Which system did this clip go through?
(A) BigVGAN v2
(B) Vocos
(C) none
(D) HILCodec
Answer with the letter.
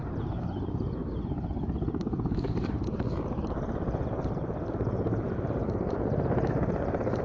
A